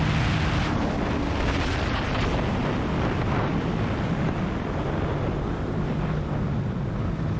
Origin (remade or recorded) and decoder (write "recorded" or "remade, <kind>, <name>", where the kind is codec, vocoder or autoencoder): recorded